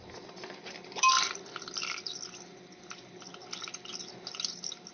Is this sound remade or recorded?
recorded